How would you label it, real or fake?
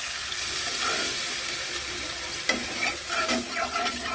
real